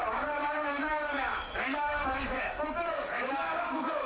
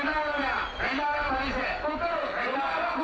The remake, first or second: first